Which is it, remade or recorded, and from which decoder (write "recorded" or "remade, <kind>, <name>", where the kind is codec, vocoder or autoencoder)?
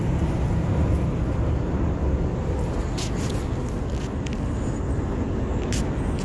recorded